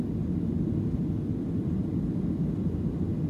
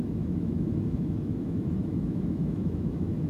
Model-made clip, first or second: second